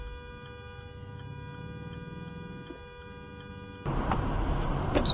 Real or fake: real